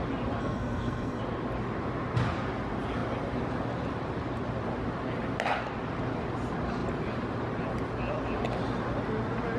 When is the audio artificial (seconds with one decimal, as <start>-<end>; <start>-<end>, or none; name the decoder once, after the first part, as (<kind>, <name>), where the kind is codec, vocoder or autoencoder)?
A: 0.4-1.2 (codec, SNAC)